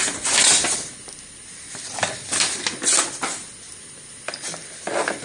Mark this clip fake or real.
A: real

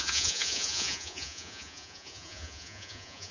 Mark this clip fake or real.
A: fake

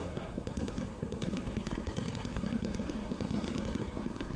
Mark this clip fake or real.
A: fake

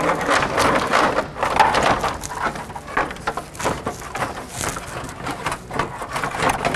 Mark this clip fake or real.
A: real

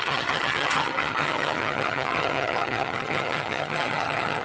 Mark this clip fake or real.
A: fake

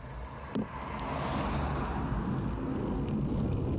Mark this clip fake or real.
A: real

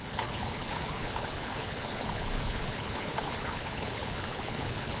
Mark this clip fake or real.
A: fake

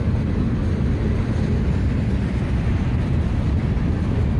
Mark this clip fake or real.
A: real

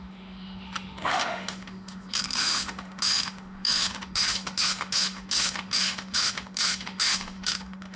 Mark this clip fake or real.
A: fake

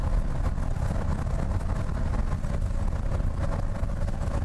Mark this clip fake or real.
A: real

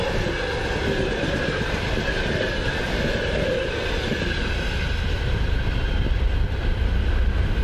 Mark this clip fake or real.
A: fake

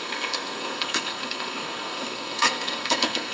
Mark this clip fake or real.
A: fake